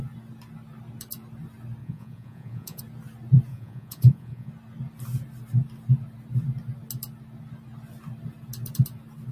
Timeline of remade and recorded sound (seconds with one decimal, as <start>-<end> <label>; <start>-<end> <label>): 0.0-1.8 recorded; 1.8-2.8 remade; 2.8-3.5 recorded; 3.5-4.5 remade; 4.5-9.3 recorded